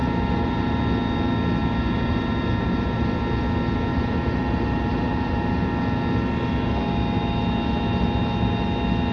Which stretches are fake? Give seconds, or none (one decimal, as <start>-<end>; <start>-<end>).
0.0-0.8; 1.6-3.2; 3.9-5.7